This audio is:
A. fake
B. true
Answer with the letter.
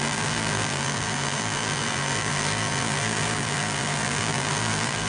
A